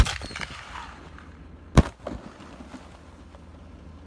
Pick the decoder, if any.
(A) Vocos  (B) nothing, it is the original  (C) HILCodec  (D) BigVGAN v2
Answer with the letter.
B